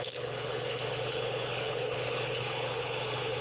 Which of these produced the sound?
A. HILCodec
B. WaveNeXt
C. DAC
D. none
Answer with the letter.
A